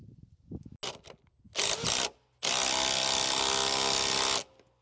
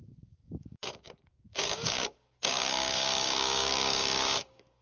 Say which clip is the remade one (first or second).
second